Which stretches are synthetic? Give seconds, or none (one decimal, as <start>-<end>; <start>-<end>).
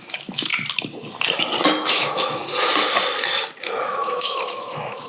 0.0-0.5; 1.9-2.4; 3.8-5.1